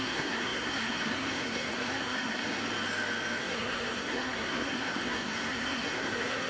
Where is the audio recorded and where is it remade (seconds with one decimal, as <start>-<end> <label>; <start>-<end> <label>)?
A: 0.0-2.6 remade; 2.6-3.4 recorded; 3.4-6.5 remade